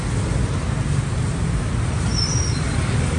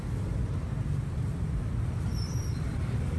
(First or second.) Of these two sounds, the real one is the first